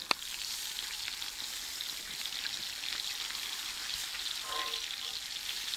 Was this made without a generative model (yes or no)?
yes